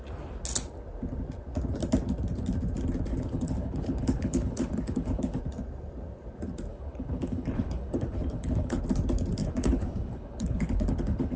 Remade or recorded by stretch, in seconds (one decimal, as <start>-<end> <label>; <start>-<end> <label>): 0.0-3.1 recorded; 3.1-5.4 remade; 5.4-6.7 recorded; 6.7-8.8 remade; 8.8-9.4 recorded; 9.4-11.4 remade